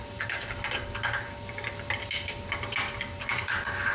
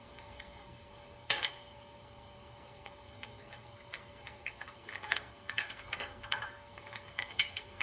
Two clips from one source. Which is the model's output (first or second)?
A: second